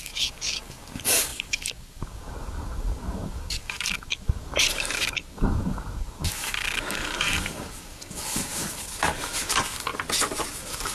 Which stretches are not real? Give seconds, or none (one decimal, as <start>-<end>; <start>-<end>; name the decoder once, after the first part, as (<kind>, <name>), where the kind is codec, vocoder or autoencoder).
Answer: 0.0-9.9 (codec, DAC); 10.5-10.9